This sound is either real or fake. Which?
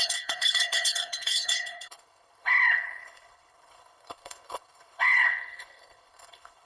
fake